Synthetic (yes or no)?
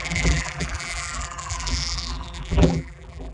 yes